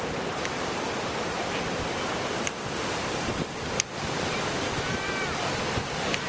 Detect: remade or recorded recorded